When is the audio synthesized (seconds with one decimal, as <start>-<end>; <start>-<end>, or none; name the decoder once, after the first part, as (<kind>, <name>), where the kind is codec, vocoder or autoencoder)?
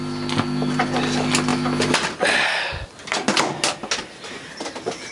none